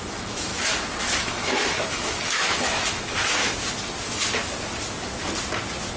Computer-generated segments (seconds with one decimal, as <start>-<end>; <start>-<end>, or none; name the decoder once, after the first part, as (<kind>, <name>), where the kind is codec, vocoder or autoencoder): 0.0-0.5 (autoencoder, DAC-VAE); 1.0-3.4